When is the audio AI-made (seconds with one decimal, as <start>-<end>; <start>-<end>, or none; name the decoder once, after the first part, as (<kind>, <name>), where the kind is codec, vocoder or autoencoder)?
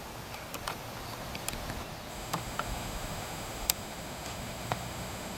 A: 2.1-5.4 (autoencoder, DAC-VAE)